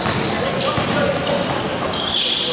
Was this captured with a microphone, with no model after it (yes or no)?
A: yes